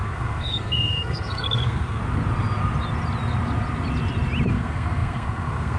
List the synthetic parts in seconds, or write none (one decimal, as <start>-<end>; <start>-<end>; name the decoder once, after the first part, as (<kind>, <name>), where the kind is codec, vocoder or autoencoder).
0.0-2.0 (codec, SNAC); 4.5-5.8